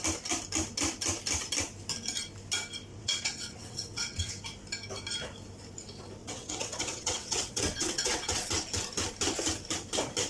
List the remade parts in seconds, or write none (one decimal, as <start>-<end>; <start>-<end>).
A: 2.9-4.3; 6.2-8.5